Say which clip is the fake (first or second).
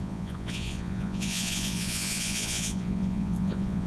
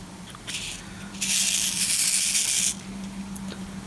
first